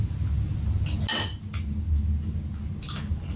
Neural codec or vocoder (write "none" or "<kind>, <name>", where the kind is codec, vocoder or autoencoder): none